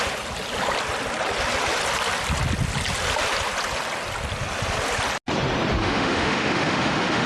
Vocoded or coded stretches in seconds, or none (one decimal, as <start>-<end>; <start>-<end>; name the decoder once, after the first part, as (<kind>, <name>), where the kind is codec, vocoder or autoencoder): 5.8-7.3 (autoencoder, DAC-VAE)